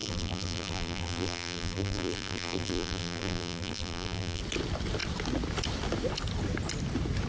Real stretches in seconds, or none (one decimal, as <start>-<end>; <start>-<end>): 4.4-7.3